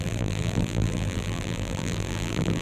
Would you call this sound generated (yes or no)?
yes